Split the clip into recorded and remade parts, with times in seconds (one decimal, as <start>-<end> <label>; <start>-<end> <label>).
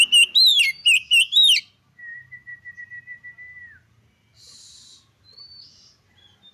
0.0-0.5 recorded; 0.5-2.8 remade; 2.8-6.5 recorded